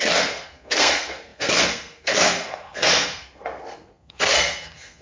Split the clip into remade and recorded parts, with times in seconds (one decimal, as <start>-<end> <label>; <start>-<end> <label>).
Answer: 0.0-5.0 remade